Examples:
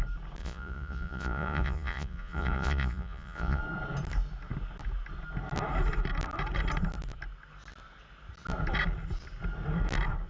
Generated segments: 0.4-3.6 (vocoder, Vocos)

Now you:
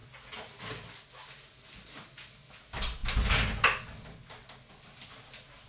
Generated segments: none